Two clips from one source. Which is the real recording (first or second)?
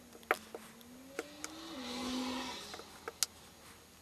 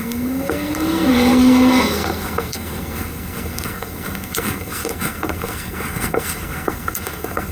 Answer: first